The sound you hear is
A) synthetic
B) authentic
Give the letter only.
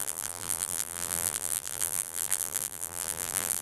A